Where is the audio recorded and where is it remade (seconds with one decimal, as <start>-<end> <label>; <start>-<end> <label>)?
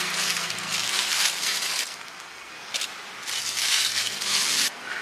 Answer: 0.0-2.7 remade; 2.7-3.4 recorded; 3.4-5.0 remade